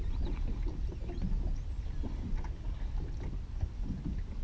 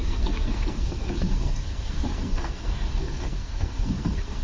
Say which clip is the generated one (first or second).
second